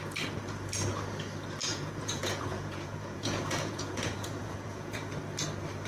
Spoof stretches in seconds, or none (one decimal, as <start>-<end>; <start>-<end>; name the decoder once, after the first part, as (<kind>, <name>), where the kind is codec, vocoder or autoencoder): 1.6-5.1 (vocoder, Vocos)